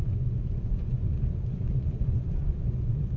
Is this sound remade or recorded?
remade